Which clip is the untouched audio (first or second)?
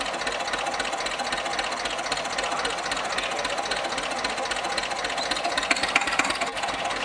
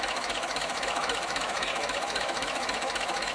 first